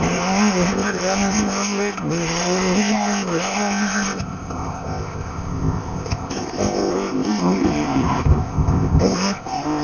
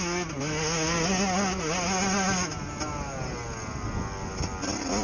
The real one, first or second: second